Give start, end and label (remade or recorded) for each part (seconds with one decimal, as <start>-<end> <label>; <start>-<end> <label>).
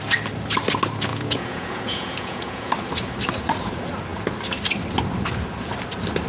0.0-1.1 recorded; 1.1-2.7 remade; 2.7-6.3 recorded